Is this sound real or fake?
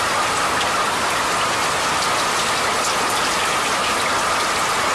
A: fake